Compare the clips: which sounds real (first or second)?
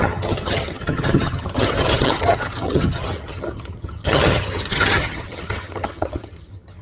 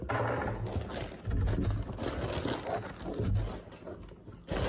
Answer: second